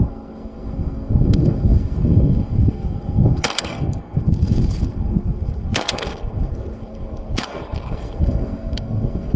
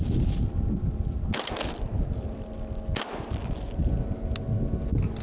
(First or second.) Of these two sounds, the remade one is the first